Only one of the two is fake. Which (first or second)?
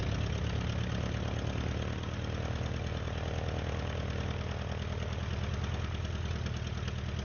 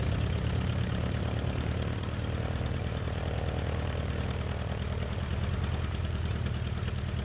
second